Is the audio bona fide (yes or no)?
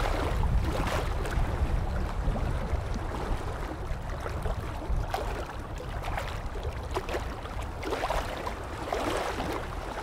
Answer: yes